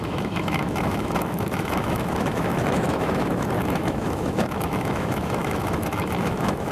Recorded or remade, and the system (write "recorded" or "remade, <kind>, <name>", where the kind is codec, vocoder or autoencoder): remade, autoencoder, DAC-VAE